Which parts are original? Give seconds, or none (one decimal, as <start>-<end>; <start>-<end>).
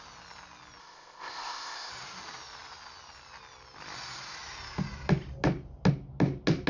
0.0-0.8; 1.9-6.7